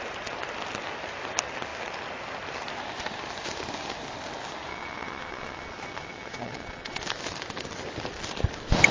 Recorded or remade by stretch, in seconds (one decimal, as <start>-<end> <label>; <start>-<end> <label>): 0.0-4.7 recorded; 4.7-7.0 remade; 7.0-8.9 recorded